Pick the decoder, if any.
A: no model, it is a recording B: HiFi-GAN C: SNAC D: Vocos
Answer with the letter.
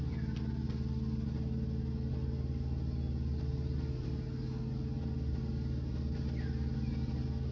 A